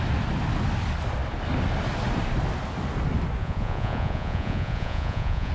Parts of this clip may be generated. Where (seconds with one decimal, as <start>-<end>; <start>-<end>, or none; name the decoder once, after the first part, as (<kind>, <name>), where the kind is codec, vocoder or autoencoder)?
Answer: 3.4-5.5 (vocoder, Vocos)